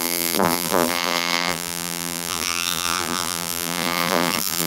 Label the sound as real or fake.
fake